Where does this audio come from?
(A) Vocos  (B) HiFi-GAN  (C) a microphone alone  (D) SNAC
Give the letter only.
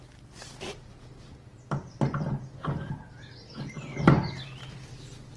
C